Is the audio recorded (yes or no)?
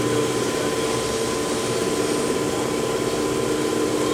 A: yes